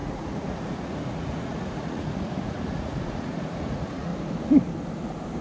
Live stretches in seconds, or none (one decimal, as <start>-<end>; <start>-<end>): 4.1-5.4